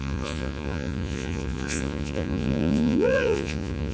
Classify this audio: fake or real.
fake